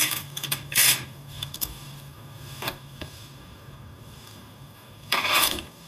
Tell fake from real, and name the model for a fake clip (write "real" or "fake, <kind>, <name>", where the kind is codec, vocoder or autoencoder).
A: fake, codec, DAC